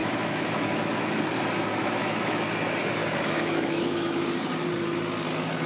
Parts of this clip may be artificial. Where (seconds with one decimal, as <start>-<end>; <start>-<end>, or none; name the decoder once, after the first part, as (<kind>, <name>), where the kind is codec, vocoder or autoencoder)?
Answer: 0.0-1.2 (autoencoder, DAC-VAE); 1.7-2.4; 3.0-4.2

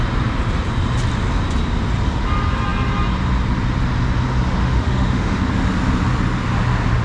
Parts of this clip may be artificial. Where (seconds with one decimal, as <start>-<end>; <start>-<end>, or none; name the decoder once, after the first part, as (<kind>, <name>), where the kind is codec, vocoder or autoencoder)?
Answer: 4.6-5.4 (autoencoder, DAC-VAE)

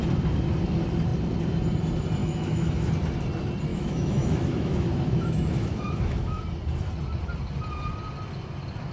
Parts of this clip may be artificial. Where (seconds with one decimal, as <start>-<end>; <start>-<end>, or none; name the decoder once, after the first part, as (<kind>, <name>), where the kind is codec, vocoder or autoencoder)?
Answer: 2.2-2.9 (autoencoder, DAC-VAE); 3.7-6.4

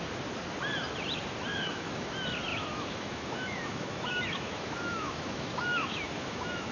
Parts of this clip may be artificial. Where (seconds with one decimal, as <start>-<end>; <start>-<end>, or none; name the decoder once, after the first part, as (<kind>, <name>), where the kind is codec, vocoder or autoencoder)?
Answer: 1.5-2.1 (autoencoder, DAC-VAE); 2.5-6.7

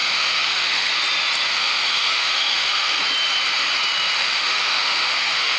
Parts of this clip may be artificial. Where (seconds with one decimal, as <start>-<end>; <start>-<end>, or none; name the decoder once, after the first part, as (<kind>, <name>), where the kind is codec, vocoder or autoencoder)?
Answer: 0.0-0.9 (autoencoder, DAC-VAE); 1.5-3.0; 4.2-5.6

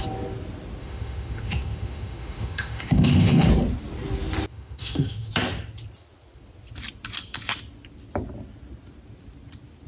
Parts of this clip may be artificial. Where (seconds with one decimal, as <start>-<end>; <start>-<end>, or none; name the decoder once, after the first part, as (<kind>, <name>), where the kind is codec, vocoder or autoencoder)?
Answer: 0.8-3.5 (autoencoder, DAC-VAE); 4.5-5.3

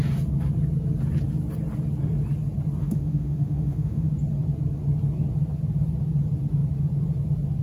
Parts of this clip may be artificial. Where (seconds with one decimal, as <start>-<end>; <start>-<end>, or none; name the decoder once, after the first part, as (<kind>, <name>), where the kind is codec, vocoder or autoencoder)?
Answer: 2.8-4.1 (autoencoder, DAC-VAE)

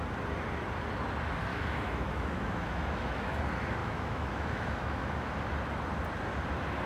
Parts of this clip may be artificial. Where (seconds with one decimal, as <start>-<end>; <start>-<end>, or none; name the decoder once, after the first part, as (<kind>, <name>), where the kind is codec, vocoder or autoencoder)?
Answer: 1.5-3.4 (autoencoder, DAC-VAE); 3.8-5.3